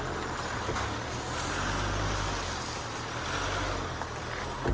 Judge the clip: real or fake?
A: real